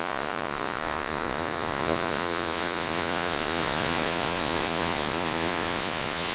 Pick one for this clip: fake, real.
fake